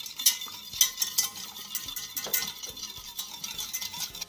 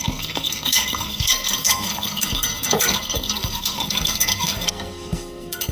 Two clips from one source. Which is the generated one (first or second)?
second